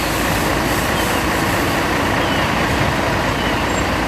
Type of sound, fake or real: real